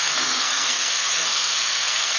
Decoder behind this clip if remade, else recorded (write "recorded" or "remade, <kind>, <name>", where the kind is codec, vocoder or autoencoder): remade, codec, SNAC